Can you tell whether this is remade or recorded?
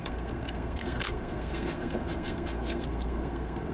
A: remade